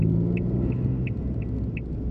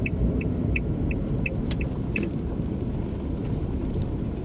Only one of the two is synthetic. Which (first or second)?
second